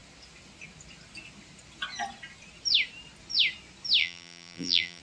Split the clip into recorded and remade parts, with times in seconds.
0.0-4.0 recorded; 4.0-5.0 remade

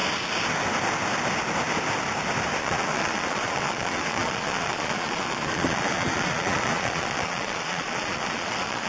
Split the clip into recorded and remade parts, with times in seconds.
0.0-2.6 recorded; 2.6-8.9 remade

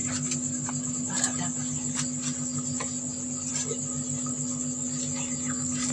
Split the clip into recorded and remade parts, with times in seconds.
0.0-5.9 recorded

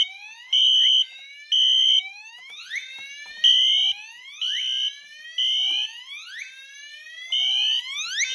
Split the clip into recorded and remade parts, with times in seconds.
0.0-0.6 recorded; 0.6-2.6 remade; 2.6-8.3 recorded

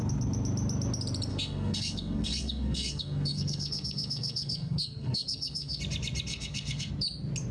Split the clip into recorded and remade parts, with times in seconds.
0.0-1.3 recorded; 1.3-5.8 remade; 5.8-6.3 recorded; 6.3-6.9 remade; 6.9-7.5 recorded

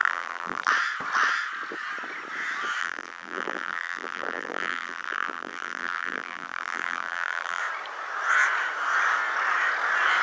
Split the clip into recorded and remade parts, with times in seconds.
0.0-0.7 remade; 0.7-2.8 recorded; 2.8-7.6 remade; 7.6-10.2 recorded

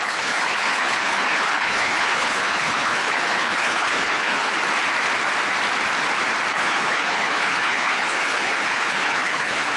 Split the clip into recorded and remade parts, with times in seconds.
0.0-4.5 remade; 4.5-6.5 recorded; 6.5-9.8 remade